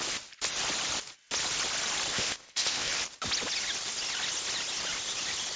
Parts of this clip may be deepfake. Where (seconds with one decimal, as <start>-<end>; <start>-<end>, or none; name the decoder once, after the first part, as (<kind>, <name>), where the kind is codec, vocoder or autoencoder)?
2.1-2.9 (codec, ZipCodec)